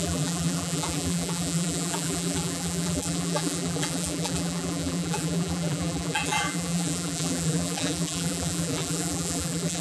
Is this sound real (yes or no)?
no